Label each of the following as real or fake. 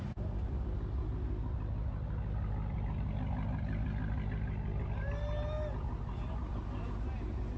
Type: real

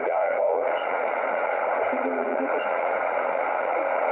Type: fake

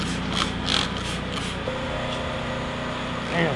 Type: real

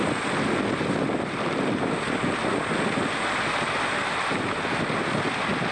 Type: real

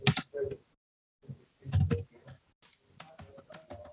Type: real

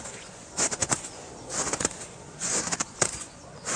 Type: fake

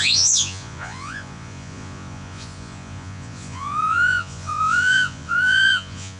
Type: fake